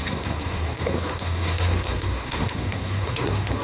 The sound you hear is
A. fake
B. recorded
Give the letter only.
A